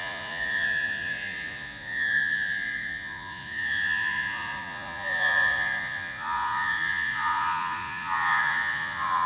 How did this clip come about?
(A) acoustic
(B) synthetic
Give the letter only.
B